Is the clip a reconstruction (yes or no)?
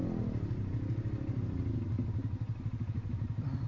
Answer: no